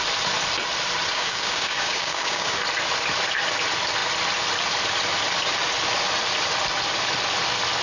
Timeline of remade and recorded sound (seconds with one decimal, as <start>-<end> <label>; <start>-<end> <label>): 0.0-1.1 recorded; 1.1-2.6 remade; 2.6-7.8 recorded